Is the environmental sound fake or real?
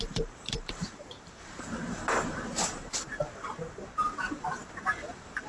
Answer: fake